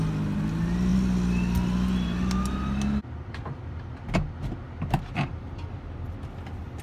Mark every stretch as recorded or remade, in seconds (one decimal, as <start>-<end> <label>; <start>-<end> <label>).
0.0-6.8 recorded